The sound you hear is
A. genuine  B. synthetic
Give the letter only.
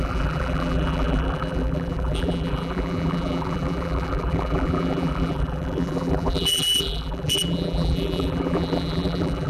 B